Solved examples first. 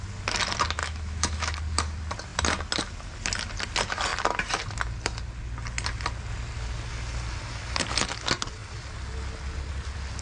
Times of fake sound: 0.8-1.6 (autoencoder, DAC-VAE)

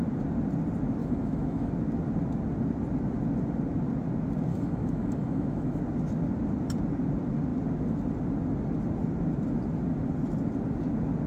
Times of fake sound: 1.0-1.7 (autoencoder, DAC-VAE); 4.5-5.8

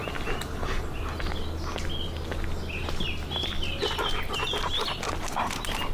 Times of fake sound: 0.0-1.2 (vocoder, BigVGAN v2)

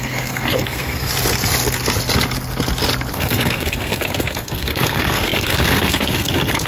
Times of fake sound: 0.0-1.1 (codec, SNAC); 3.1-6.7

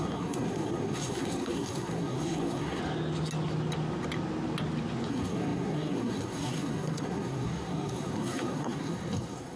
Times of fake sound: 0.0-2.8 (codec, SNAC); 5.1-9.6

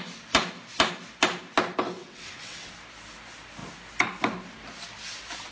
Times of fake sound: 2.0-2.7 (vocoder, WaveNeXt)

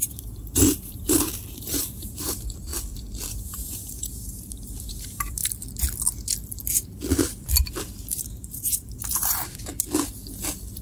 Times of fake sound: 0.0-2.7 (vocoder, BigVGAN v2); 3.3-5.4; 7.6-9.7